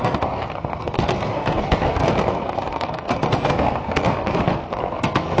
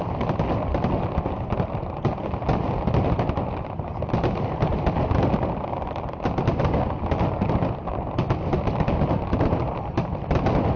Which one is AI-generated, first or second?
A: first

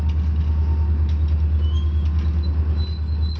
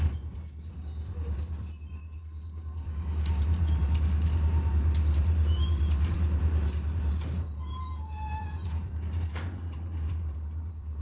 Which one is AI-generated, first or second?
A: second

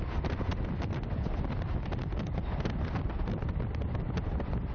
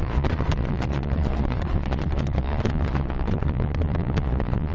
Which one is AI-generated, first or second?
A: second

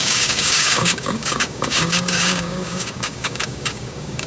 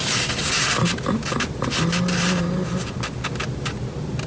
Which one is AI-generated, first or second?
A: first